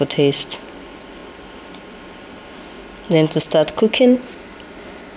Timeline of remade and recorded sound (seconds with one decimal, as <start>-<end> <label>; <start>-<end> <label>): 0.0-5.2 recorded

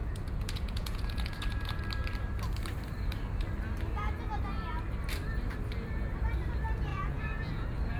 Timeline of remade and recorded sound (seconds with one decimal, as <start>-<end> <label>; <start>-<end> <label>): 0.0-1.8 remade; 1.8-6.9 recorded; 6.9-7.5 remade; 7.5-8.0 recorded

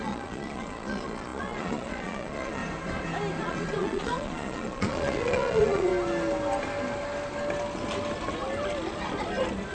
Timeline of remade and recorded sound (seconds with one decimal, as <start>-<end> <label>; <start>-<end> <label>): 0.0-2.6 remade; 2.6-3.4 recorded; 3.4-5.9 remade; 5.9-9.7 recorded

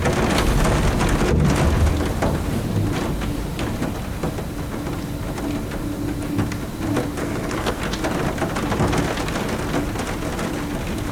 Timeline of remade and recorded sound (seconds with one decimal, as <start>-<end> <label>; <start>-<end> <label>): 0.0-7.2 recorded; 7.2-7.8 remade; 7.8-11.1 recorded

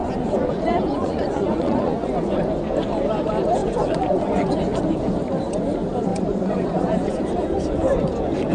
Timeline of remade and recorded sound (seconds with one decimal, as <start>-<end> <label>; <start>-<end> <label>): 0.0-2.4 remade; 2.4-3.6 recorded; 3.6-4.8 remade; 4.8-6.1 recorded; 6.1-7.2 remade; 7.2-8.5 recorded